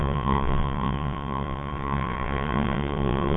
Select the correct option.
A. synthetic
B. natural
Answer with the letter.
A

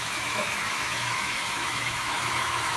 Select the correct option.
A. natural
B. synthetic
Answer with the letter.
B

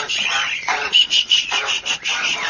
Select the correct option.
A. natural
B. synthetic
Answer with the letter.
B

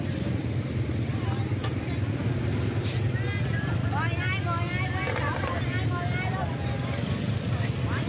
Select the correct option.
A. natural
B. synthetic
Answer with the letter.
A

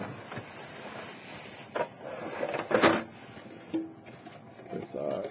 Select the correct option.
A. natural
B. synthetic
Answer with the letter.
A